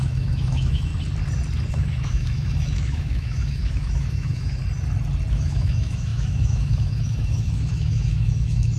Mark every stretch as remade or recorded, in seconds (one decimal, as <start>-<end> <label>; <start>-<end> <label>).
0.0-0.9 remade; 0.9-1.7 recorded; 1.7-4.6 remade; 4.6-5.3 recorded; 5.3-8.8 remade